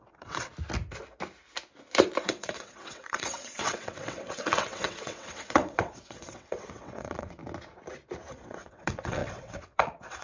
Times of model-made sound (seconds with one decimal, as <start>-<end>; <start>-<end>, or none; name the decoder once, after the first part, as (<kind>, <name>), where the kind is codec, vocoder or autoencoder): 0.0-0.5 (vocoder, WaveNeXt); 2.2-7.4; 8.3-10.2